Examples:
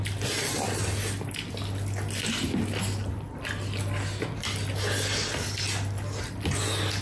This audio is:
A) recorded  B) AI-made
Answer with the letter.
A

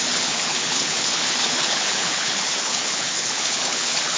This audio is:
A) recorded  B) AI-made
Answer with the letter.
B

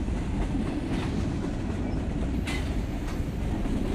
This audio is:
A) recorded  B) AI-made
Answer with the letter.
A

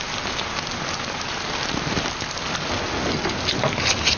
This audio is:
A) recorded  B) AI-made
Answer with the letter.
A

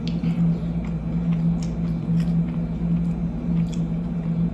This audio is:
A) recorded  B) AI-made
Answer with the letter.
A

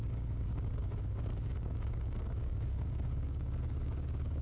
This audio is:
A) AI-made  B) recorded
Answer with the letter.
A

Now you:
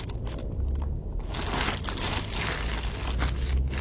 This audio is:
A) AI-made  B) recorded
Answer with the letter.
B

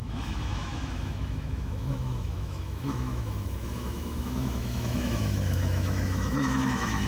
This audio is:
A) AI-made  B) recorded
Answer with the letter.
A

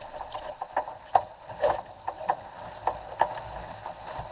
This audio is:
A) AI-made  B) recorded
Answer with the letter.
B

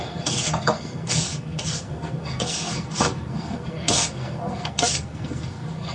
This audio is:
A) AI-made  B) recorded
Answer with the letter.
A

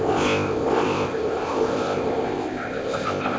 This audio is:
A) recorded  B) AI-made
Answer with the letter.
B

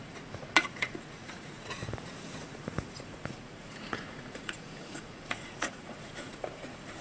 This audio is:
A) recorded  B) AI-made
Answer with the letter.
B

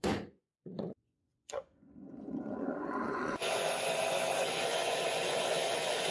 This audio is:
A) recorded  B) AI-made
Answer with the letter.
B